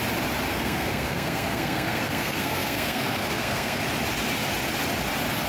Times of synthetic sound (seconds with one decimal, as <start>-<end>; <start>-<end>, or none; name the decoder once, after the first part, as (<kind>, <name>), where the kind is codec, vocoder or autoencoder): 0.5-3.8 (codec, SNAC)